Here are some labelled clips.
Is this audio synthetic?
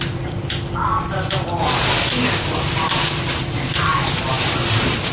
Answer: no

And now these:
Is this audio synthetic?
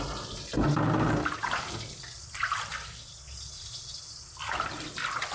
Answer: no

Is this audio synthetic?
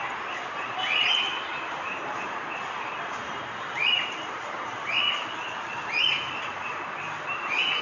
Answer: no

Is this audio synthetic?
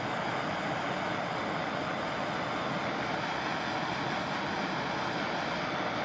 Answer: no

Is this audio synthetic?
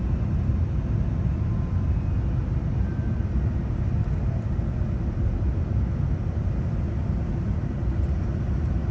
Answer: no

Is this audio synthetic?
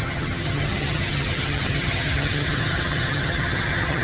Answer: yes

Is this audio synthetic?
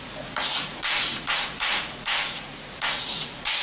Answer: yes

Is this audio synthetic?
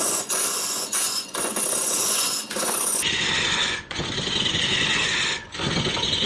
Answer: yes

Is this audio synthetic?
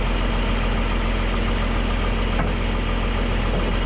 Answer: no